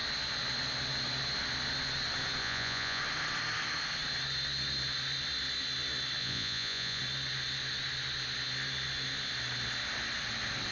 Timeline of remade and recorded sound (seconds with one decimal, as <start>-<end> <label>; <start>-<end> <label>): 0.0-2.4 recorded; 2.4-3.0 remade; 3.0-6.2 recorded; 6.2-7.0 remade; 7.0-10.7 recorded